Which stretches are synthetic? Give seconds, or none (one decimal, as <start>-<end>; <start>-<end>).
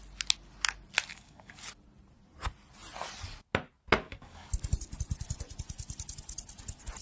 1.1-1.6; 4.0-4.5